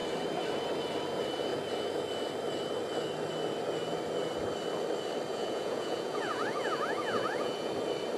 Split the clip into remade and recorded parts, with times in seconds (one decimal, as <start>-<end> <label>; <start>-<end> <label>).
0.0-5.3 recorded; 5.3-7.7 remade; 7.7-8.2 recorded